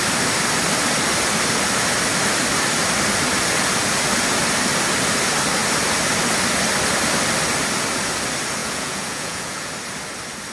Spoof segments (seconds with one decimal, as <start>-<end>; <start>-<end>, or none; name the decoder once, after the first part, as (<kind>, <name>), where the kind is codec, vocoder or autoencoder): 8.6-9.7 (vocoder, Vocos)